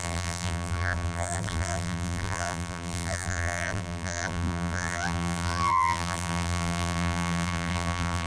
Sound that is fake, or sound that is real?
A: fake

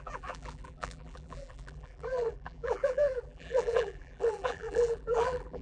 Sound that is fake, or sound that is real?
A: fake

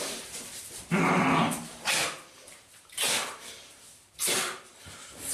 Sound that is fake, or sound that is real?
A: fake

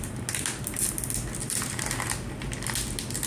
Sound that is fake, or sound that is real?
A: real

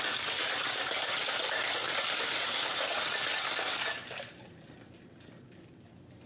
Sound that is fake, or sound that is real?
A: real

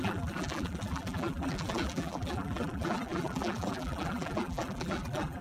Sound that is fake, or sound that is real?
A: fake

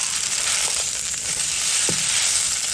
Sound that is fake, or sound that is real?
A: fake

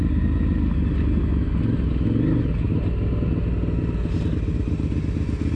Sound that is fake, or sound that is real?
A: real